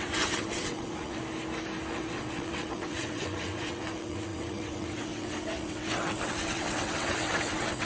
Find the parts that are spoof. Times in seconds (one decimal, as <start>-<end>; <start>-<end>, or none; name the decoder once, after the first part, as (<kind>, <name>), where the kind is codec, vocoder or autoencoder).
0.0-1.2 (vocoder, WaveNeXt); 1.9-7.9